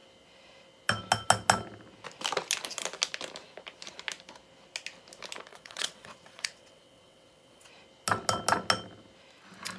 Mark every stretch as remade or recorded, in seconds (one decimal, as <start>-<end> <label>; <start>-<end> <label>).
0.0-5.5 recorded; 5.5-7.7 remade; 7.7-9.8 recorded